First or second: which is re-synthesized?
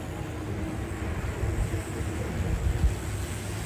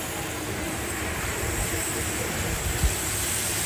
second